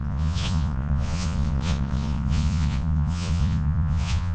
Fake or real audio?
fake